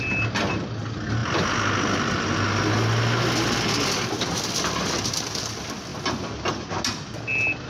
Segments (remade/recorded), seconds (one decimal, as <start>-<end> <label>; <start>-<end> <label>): 0.0-7.7 recorded